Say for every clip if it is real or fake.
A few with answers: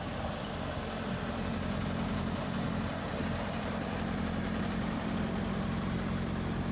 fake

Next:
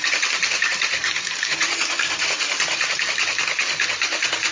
fake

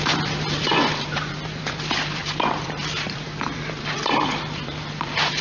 fake